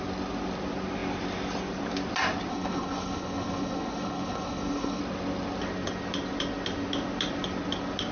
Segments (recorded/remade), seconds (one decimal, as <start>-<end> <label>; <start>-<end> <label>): 0.0-2.5 recorded; 2.5-5.0 remade; 5.0-8.1 recorded